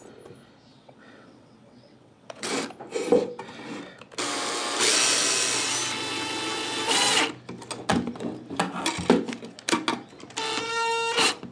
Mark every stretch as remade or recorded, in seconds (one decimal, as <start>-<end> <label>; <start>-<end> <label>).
0.0-0.7 recorded; 0.7-2.5 remade; 2.5-11.5 recorded